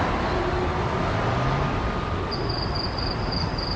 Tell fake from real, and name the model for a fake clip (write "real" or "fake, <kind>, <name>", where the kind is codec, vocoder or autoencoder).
real